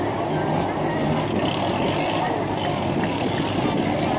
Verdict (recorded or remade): recorded